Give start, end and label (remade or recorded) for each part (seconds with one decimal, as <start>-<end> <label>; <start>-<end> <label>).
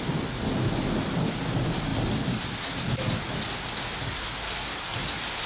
0.0-5.5 recorded